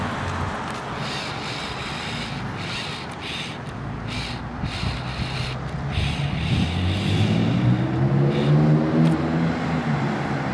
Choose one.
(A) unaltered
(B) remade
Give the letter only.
A